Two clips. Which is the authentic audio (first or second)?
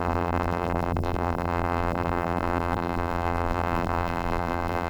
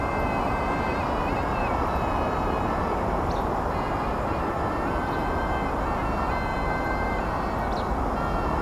second